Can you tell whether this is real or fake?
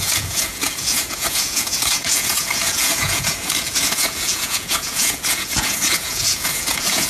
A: fake